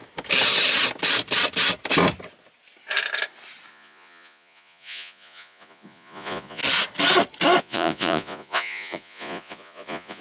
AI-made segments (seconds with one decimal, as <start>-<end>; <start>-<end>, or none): 3.7-6.6; 7.6-10.2